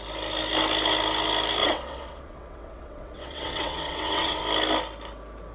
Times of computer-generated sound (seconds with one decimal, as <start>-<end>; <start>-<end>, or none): 1.6-4.4